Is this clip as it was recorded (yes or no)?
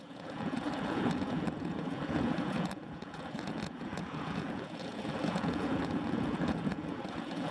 no